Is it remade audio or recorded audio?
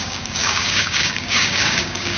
remade